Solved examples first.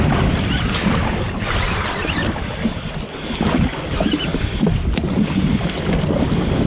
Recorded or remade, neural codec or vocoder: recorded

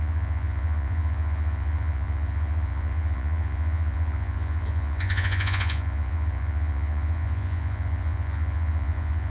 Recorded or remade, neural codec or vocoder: remade, vocoder, Vocos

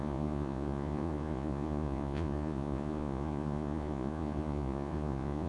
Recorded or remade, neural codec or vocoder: remade, vocoder, Vocos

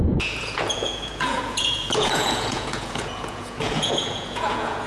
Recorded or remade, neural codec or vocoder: remade, vocoder, Vocos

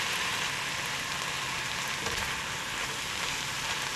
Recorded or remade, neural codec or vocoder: recorded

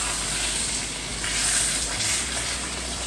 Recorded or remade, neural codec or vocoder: recorded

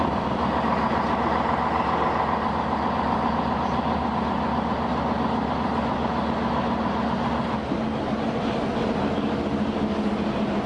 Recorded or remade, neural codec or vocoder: recorded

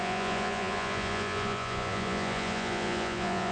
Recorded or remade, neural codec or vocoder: remade, vocoder, Vocos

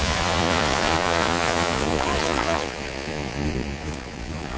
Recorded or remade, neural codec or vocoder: remade, vocoder, Vocos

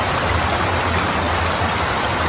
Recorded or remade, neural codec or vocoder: recorded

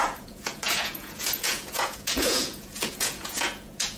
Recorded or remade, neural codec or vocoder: remade, vocoder, Vocos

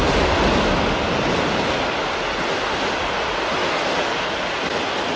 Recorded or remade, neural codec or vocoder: recorded